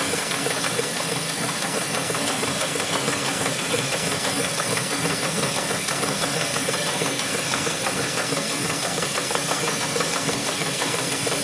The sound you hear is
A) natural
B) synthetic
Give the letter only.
B